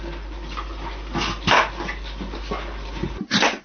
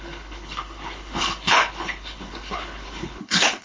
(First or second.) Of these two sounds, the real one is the first